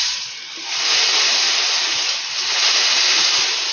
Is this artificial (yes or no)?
no